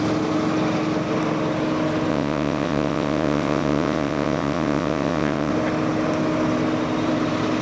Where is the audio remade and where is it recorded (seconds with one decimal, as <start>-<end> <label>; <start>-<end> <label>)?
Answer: 0.0-2.1 recorded; 2.1-5.5 remade; 5.5-7.6 recorded